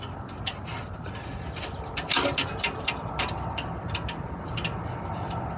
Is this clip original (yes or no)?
yes